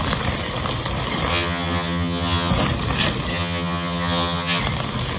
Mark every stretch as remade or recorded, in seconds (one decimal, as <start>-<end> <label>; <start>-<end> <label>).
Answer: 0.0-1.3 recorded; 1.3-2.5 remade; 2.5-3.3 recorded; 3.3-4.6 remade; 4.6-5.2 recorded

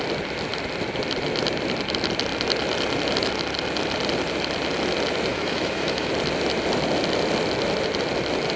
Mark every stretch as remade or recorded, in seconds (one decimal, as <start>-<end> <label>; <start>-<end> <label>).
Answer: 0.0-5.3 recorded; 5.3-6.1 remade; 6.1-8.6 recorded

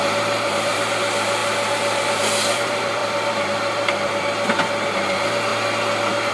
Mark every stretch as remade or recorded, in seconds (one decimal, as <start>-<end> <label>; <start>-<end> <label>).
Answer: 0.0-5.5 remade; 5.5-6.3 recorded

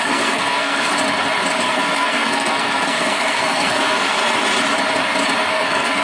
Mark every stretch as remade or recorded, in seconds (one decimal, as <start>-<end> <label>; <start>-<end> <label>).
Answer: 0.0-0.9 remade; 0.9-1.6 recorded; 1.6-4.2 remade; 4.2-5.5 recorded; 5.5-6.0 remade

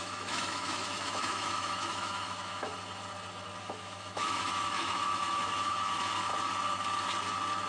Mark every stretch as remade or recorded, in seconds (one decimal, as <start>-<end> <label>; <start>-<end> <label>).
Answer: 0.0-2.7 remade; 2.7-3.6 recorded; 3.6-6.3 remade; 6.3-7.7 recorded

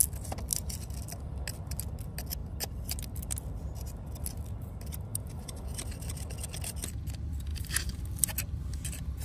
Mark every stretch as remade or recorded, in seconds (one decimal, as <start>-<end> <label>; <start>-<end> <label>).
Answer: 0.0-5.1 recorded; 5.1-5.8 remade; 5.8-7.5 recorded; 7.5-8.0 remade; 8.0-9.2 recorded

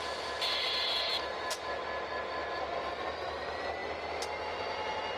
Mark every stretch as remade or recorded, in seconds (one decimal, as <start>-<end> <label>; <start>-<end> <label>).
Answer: 0.0-1.1 recorded; 1.1-1.8 remade; 1.8-2.4 recorded; 2.4-3.4 remade; 3.4-5.2 recorded

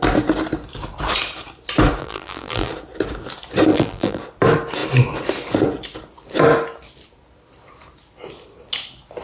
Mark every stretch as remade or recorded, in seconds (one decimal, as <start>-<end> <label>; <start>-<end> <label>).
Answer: 0.0-2.0 recorded; 2.0-2.7 remade; 2.7-3.7 recorded; 3.7-4.2 remade; 4.2-9.2 recorded